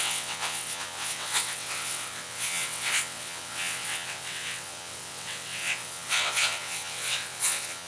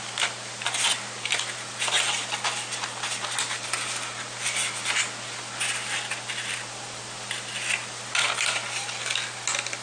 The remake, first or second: first